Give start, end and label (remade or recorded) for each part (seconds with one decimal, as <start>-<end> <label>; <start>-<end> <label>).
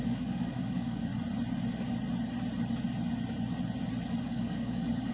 0.0-1.1 remade; 1.1-4.2 recorded; 4.2-5.1 remade